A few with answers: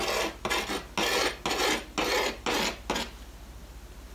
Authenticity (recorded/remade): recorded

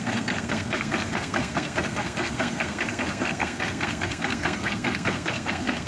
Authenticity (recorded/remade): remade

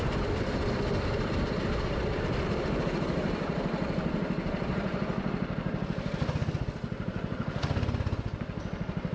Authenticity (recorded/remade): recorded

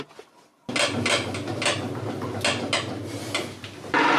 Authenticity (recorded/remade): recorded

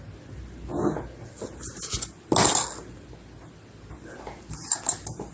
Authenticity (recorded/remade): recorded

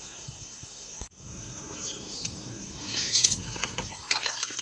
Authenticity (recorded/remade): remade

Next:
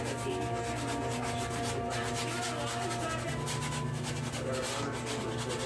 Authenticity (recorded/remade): recorded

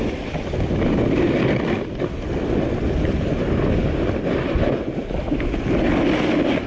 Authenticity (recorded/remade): recorded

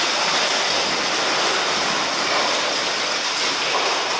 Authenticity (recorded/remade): recorded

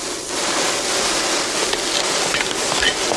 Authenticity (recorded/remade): recorded